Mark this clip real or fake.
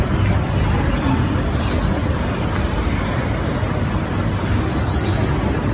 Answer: real